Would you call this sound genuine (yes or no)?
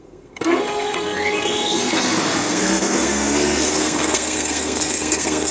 no